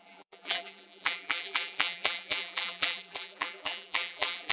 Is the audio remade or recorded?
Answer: remade